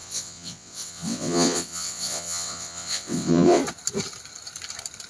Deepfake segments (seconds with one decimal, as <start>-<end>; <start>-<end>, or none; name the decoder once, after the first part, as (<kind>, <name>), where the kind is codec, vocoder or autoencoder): 0.0-3.6 (vocoder, WaveNeXt)